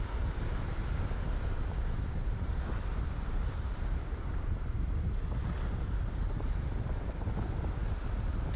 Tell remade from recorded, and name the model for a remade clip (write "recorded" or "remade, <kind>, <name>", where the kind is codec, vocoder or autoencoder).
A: recorded